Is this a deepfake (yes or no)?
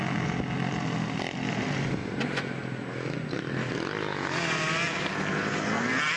no